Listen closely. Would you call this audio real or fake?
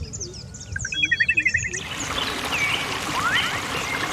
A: real